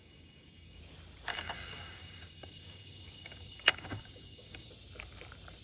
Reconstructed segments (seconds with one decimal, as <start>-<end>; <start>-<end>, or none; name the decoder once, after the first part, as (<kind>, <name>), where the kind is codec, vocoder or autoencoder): 0.0-0.8 (codec, DAC); 1.3-4.7

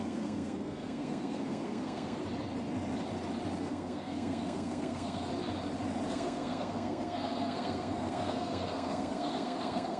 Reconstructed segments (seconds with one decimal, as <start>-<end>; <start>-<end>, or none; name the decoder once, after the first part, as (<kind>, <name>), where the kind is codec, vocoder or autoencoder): 0.0-2.2 (codec, SNAC); 3.6-5.3; 6.1-10.0

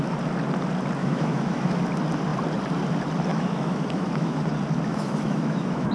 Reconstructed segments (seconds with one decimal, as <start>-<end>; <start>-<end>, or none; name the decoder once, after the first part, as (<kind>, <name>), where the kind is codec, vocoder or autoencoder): 1.0-1.8 (autoencoder, DAC-VAE); 3.3-4.4; 4.9-5.9

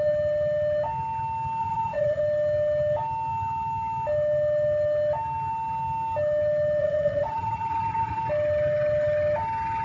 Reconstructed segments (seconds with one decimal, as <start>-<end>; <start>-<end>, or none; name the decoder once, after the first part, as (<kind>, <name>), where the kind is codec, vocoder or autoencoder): 1.6-2.2 (vocoder, Vocos); 6.8-8.2

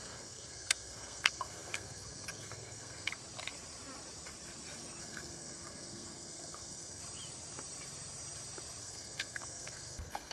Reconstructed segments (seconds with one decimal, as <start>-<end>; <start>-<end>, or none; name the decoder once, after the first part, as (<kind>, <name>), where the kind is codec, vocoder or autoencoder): 0.0-3.1 (codec, SNAC); 5.0-7.0; 8.8-10.3